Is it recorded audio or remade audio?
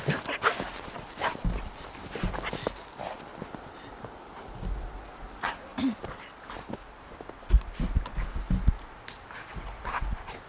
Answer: recorded